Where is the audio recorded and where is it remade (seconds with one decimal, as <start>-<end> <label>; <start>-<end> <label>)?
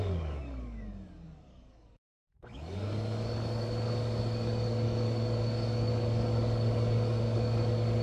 0.0-8.0 remade